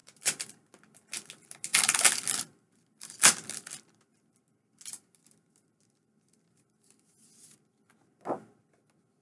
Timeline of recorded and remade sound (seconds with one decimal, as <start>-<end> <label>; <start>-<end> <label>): 0.0-0.7 remade; 0.7-9.2 recorded